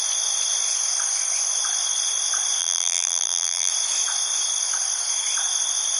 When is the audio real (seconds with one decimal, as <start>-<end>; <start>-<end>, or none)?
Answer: 0.0-2.6; 3.7-6.0